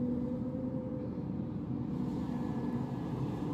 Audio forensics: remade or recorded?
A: remade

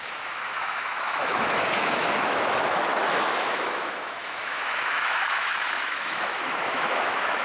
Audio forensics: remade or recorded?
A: remade